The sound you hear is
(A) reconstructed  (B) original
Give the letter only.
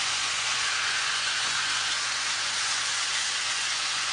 A